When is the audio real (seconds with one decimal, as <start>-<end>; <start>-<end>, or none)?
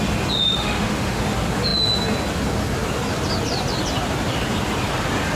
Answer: 0.0-0.5; 1.2-5.4